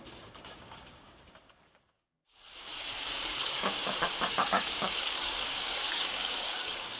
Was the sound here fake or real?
fake